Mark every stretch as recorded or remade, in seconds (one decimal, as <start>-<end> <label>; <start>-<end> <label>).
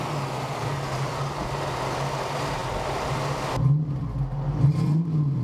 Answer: 0.0-5.4 recorded